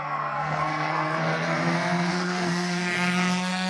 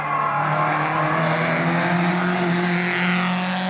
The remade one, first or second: first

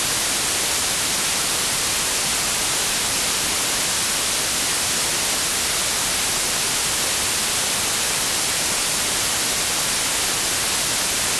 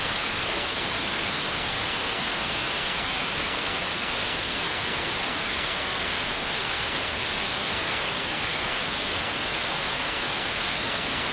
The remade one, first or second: second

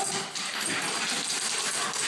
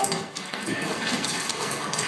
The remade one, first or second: second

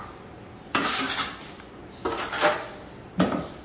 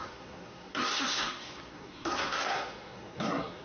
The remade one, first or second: second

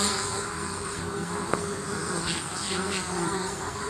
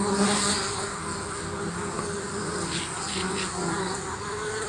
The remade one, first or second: first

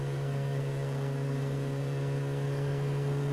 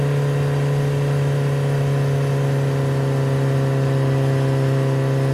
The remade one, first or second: first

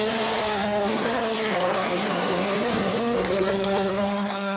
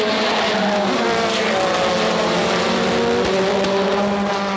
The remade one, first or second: first